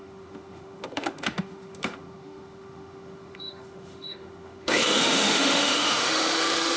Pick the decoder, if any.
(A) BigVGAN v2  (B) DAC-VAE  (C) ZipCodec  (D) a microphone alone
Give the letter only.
B